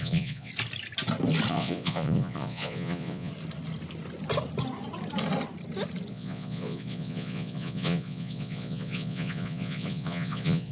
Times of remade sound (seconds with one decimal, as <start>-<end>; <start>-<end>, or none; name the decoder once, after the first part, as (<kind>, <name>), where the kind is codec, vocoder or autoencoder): 0.0-0.5 (vocoder, Vocos); 1.5-3.3; 6.1-10.7